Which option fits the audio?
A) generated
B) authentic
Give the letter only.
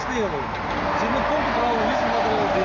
B